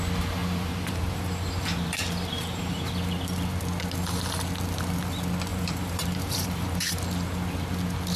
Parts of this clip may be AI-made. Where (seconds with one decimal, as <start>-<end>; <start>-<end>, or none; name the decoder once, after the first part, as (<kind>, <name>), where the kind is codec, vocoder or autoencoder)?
0.4-2.9 (vocoder, BigVGAN v2); 5.5-6.9